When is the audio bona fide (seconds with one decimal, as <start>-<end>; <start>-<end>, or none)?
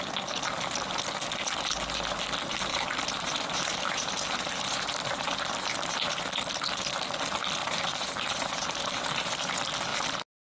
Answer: 0.0-2.7; 6.1-7.6; 9.5-10.5